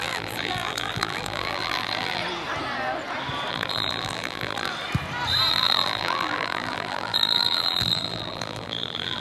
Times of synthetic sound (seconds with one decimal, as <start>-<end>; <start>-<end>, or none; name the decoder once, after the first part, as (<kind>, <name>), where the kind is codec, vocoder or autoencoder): 0.0-2.2 (vocoder, BigVGAN v2); 3.5-4.7; 5.5-9.2